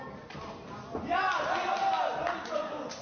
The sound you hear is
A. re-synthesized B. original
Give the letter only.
B